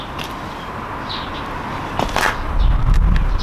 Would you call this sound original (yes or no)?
yes